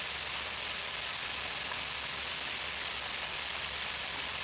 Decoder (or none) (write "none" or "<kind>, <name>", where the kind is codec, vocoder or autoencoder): none